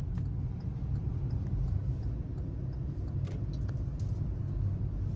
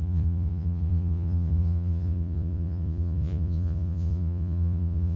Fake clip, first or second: second